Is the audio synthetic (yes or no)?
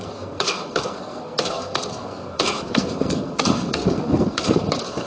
yes